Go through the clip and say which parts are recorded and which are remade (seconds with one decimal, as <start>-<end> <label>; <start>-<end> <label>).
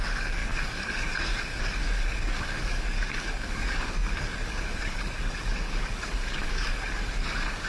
0.0-7.7 remade